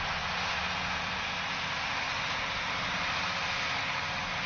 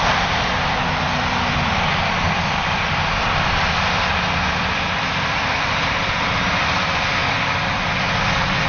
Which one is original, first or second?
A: first